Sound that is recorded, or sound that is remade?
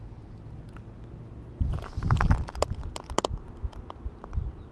recorded